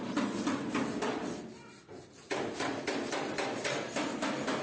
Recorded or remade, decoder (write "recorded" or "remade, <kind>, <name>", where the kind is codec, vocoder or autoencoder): recorded